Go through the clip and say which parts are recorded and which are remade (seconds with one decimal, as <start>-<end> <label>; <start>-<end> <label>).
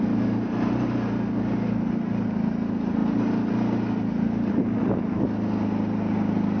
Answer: 0.0-6.6 recorded